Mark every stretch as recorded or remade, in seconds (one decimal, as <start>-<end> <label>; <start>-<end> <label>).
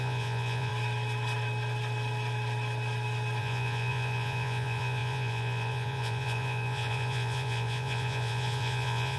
0.0-0.7 remade; 0.7-3.4 recorded; 3.4-9.2 remade